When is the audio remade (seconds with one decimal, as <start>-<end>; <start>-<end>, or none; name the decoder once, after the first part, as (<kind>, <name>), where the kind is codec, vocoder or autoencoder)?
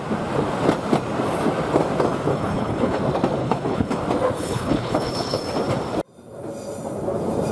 2.3-3.0 (codec, HILCodec); 3.4-4.0; 4.4-5.4